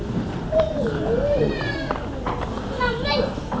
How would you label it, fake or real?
real